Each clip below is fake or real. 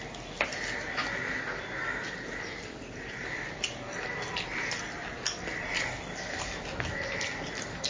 real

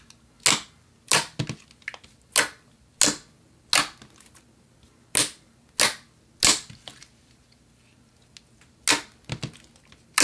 real